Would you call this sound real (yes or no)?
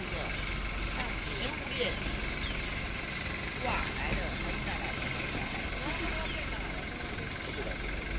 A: yes